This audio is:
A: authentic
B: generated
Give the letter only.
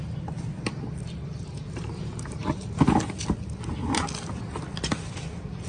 A